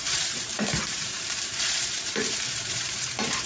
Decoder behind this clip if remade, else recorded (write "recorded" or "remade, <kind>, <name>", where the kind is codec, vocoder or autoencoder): remade, vocoder, BigVGAN v2